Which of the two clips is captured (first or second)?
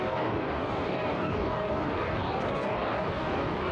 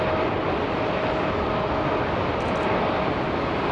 second